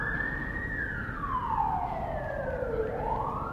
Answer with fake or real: real